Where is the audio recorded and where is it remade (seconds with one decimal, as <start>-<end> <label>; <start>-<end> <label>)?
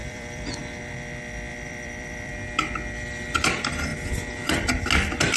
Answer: 0.0-0.6 remade; 0.6-1.5 recorded; 1.5-2.3 remade; 2.3-5.4 recorded